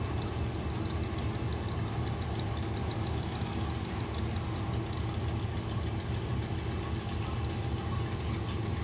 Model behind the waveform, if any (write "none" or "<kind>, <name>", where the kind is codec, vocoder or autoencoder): none